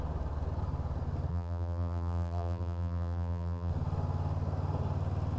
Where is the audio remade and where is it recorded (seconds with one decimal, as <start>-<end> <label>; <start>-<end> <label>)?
0.0-1.3 recorded; 1.3-3.7 remade; 3.7-5.4 recorded